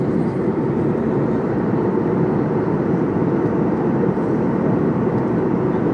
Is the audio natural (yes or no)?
no